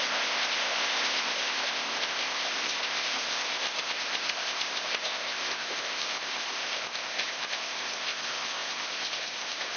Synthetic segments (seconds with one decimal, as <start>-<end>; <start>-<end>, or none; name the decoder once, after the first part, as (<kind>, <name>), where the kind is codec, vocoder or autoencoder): 0.0-9.8 (codec, ZipCodec)